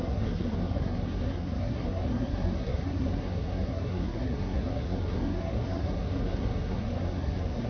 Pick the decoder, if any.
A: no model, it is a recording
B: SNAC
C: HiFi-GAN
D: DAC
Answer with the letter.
B